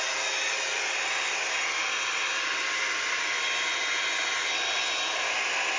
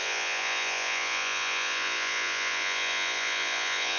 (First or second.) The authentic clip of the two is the first